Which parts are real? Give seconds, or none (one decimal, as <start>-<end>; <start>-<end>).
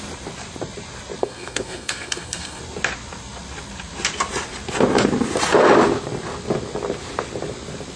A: 0.0-1.2; 2.6-8.0